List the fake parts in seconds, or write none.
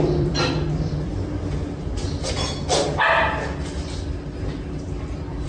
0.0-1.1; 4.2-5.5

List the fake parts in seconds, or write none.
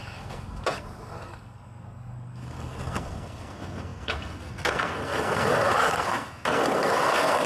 0.0-7.5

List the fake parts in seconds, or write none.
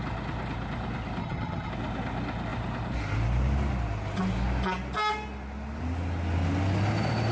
1.2-1.7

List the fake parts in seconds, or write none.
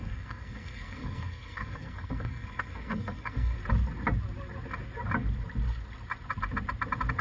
0.0-3.6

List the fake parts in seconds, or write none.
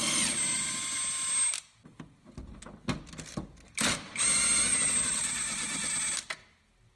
4.7-5.9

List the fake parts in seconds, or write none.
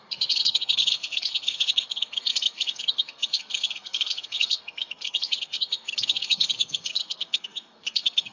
0.0-8.3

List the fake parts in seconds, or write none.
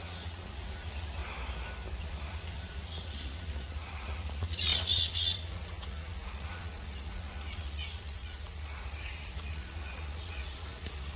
0.0-1.2; 2.0-11.2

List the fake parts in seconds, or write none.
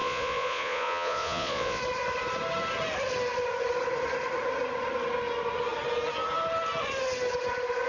0.0-1.8